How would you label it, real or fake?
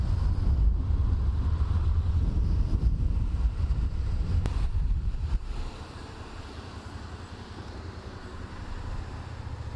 real